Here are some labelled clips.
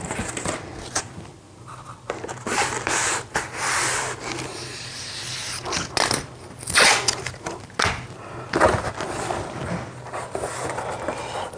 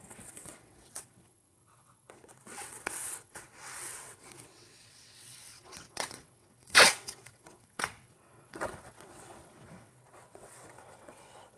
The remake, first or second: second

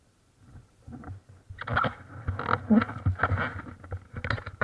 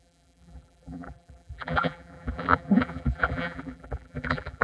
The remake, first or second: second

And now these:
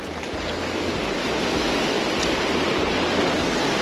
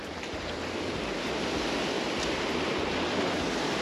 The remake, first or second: second